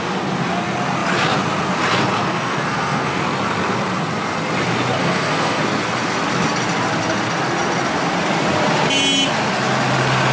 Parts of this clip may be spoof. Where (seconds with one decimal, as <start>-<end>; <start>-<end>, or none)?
2.3-3.2; 5.0-5.6

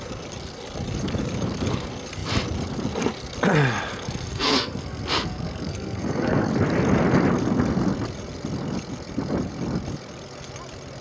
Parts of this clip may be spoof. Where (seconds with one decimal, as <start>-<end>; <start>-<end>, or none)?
3.9-6.5

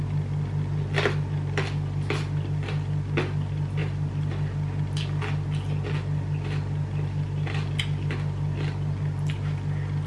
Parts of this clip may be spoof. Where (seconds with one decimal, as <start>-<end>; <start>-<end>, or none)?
none

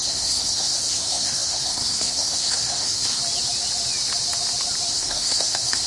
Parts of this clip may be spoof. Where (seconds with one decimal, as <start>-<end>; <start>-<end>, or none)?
0.0-3.2; 4.9-5.9

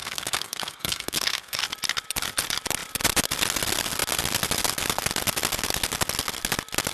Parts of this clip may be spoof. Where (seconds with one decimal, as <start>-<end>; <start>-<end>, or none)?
0.0-1.6